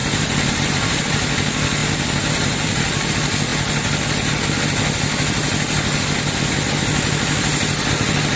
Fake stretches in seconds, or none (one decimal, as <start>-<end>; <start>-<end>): 0.0-1.0; 1.8-3.1

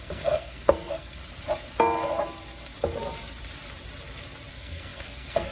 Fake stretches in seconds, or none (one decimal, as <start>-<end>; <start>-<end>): 0.0-1.2; 4.5-5.5

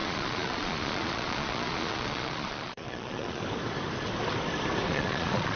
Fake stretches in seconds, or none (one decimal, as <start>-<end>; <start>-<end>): 0.0-3.4; 4.9-5.6

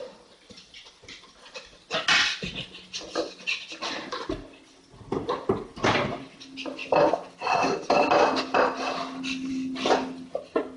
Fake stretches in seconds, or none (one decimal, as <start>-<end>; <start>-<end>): none

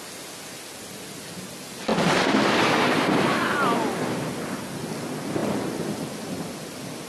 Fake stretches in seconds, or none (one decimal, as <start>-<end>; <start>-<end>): 5.4-7.1

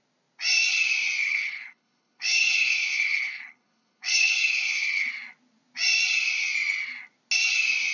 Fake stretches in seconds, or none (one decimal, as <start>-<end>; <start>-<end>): 1.2-5.1